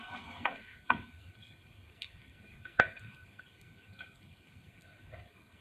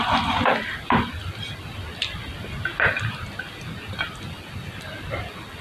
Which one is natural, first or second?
second